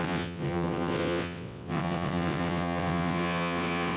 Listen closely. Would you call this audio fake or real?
fake